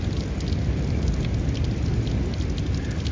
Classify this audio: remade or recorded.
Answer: recorded